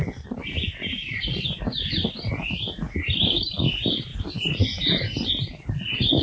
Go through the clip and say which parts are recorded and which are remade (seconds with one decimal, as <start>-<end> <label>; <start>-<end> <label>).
0.0-4.1 recorded; 4.1-5.3 remade; 5.3-6.2 recorded